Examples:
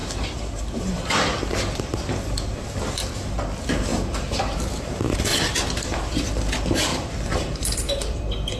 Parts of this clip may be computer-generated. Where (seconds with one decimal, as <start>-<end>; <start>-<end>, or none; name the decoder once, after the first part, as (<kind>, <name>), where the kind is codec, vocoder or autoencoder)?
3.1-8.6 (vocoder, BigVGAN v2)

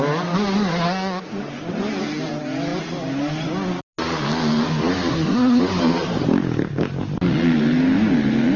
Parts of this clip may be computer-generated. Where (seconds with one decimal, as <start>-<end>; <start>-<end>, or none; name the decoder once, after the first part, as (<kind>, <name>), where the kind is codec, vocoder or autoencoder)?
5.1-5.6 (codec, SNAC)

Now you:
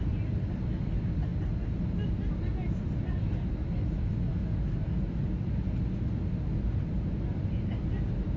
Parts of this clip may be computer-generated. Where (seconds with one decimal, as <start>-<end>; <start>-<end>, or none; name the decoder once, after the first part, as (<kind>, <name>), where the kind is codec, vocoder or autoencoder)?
none

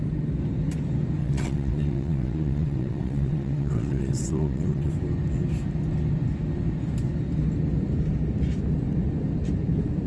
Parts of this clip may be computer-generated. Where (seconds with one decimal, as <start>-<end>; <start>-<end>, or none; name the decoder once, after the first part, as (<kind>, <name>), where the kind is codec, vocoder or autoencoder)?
1.2-4.9 (vocoder, WaveNeXt)